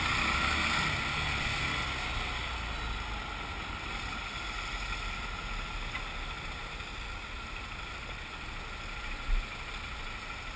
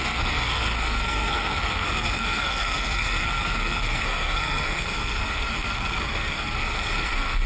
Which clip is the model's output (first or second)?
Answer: second